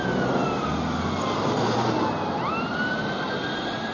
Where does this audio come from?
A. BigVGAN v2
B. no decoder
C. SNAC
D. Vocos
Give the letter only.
B